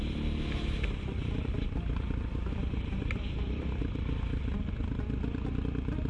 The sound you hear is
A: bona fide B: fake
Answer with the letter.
B